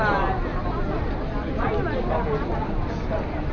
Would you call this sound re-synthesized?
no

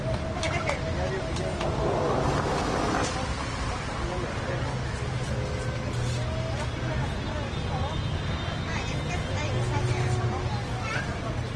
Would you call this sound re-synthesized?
no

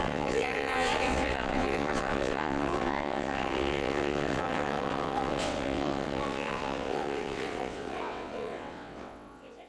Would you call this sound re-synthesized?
yes